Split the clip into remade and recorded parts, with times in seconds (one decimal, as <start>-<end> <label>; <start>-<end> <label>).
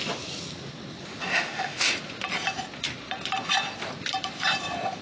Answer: 0.0-1.3 recorded; 1.3-2.0 remade; 2.0-5.0 recorded